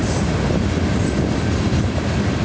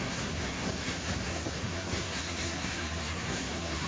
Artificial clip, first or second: second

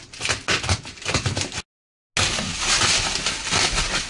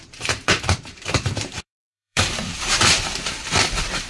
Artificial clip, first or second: second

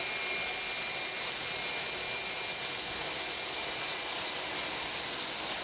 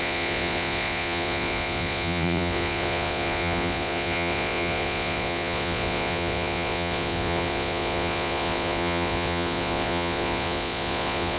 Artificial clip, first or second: second